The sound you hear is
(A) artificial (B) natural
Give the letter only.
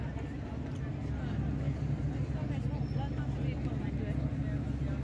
B